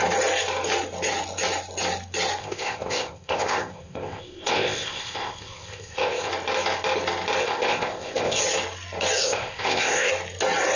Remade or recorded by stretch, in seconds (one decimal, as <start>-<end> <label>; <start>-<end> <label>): 0.0-2.4 recorded; 2.4-6.3 remade; 6.3-7.4 recorded; 7.4-8.4 remade; 8.4-9.2 recorded; 9.2-10.1 remade; 10.1-10.8 recorded